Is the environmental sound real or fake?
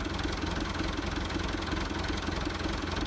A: real